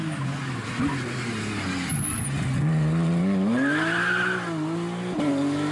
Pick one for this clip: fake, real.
real